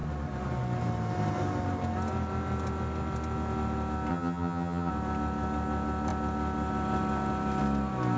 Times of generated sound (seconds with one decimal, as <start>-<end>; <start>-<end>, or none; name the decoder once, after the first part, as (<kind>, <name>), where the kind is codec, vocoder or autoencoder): 4.1-4.9 (vocoder, HiFi-GAN)